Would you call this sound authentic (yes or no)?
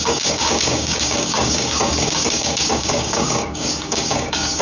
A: no